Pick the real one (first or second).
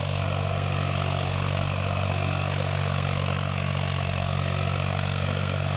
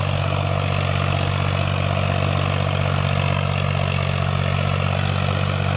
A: second